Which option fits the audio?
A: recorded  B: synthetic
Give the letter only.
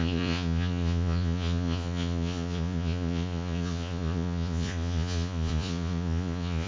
B